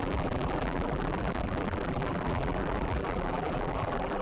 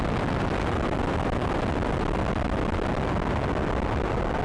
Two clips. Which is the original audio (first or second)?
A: second